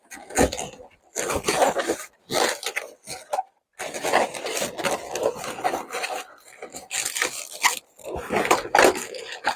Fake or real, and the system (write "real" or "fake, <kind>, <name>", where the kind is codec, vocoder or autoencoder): real